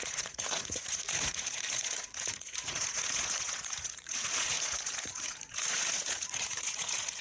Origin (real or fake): fake